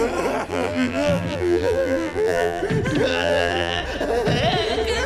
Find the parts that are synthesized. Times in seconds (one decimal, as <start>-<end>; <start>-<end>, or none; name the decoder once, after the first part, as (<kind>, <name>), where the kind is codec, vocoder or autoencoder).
0.5-2.6 (vocoder, BigVGAN v2); 3.1-3.8